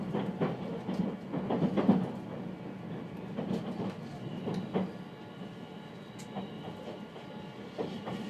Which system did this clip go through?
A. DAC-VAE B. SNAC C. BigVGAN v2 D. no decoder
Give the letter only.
D